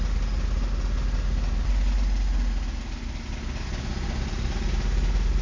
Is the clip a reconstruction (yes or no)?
no